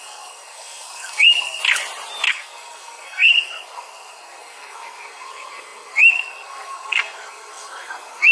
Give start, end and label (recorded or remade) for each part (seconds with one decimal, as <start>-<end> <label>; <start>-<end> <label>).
0.0-1.6 remade; 1.6-2.3 recorded; 2.3-8.3 remade